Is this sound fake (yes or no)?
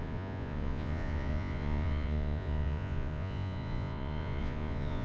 yes